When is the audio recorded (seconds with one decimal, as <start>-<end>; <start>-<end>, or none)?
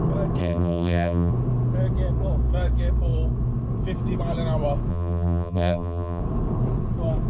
0.0-0.4; 1.3-4.9; 6.2-7.3